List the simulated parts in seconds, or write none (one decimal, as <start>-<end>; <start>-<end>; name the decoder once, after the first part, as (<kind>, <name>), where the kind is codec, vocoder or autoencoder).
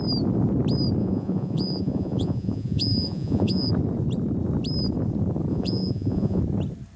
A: 1.0-3.7 (vocoder, Vocos); 5.5-6.4